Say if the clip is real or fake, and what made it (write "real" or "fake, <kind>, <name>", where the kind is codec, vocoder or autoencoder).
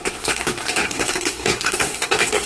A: fake, codec, SNAC